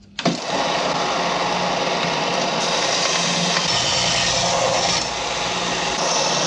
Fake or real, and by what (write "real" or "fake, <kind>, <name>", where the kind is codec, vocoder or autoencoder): real